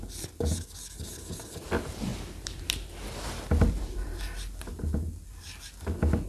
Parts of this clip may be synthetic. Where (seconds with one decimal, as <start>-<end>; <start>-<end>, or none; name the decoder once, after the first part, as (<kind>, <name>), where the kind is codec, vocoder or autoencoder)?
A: 1.1-1.7 (vocoder, BigVGAN v2); 2.1-2.6